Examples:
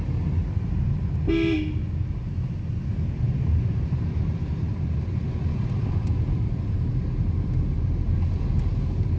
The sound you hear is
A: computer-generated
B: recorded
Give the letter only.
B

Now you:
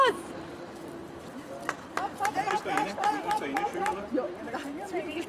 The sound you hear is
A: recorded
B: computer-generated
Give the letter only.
B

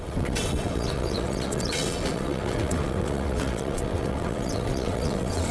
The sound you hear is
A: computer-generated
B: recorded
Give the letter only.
A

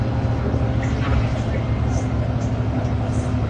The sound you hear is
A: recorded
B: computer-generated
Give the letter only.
A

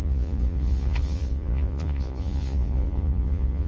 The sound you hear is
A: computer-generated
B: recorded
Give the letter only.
A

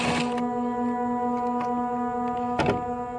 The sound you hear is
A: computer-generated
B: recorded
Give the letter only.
B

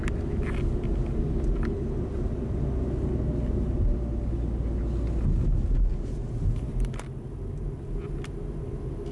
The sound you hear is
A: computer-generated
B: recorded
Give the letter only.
B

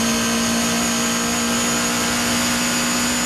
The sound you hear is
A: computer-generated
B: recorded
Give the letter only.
B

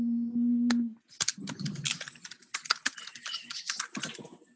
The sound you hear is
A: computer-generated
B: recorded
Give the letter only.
B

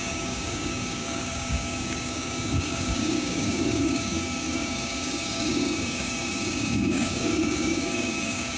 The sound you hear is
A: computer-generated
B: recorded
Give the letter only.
A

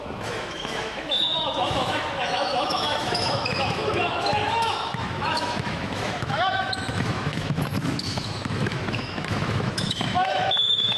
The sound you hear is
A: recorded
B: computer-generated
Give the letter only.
B